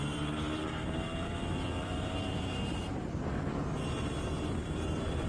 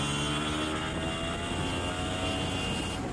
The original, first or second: second